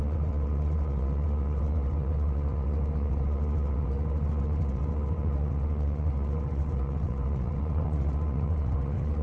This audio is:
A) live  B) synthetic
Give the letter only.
B